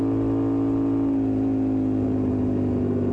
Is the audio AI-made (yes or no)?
no